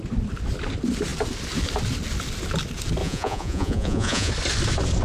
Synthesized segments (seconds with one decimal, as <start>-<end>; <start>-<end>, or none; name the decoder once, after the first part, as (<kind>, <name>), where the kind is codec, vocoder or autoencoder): 3.0-4.3 (vocoder, Vocos)